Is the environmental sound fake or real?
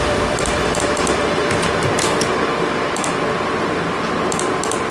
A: real